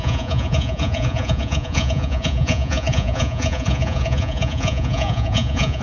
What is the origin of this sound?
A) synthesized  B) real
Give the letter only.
A